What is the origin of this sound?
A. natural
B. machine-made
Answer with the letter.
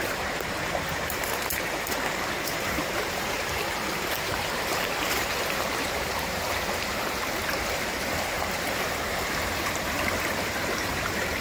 B